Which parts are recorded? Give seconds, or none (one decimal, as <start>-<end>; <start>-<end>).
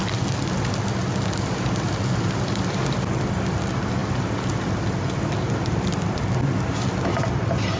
0.0-7.8